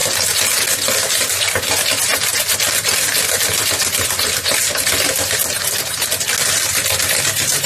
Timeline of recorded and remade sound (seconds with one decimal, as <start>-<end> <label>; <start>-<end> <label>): 0.0-7.7 recorded